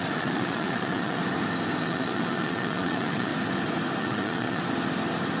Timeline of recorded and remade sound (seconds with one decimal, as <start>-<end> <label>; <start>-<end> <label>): 0.0-1.2 remade; 1.2-1.8 recorded; 1.8-3.3 remade; 3.3-4.0 recorded; 4.0-4.6 remade; 4.6-5.4 recorded

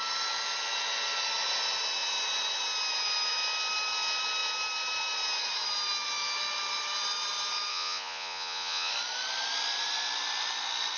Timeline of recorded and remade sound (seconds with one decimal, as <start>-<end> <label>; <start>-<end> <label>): 0.0-7.7 recorded; 7.7-8.9 remade; 8.9-11.0 recorded